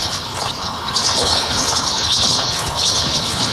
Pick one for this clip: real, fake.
fake